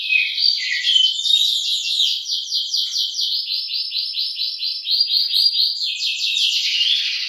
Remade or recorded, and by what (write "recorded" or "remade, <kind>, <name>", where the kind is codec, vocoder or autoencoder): remade, vocoder, BigVGAN v2